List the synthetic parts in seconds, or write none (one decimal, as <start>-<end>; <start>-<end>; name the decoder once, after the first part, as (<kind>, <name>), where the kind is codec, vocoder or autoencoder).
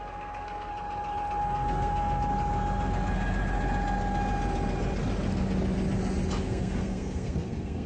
0.0-0.7 (codec, SNAC); 1.4-2.3; 6.4-7.9